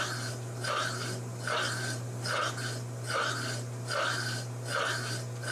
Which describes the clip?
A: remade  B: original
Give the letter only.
B